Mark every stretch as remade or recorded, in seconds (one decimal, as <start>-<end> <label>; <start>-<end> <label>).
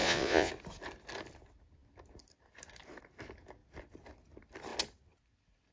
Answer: 0.0-0.5 remade; 0.5-5.7 recorded